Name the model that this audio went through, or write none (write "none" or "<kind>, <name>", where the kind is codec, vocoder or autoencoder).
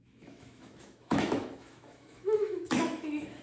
autoencoder, DAC-VAE